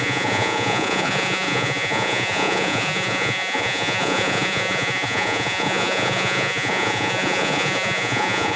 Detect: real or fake fake